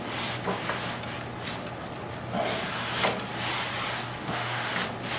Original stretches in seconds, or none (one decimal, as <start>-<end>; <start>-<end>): 0.0-4.2; 4.7-5.2